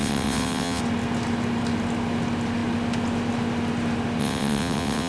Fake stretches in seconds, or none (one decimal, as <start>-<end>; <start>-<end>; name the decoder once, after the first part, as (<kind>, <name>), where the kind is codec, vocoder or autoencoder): 0.0-0.8 (vocoder, WaveNeXt); 4.2-5.1